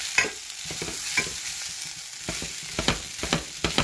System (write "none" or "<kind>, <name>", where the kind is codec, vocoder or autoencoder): none